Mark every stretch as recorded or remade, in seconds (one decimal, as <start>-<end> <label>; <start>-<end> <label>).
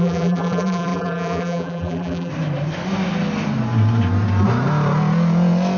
0.0-2.3 remade; 2.3-5.8 recorded